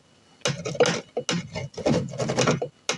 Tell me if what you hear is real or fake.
real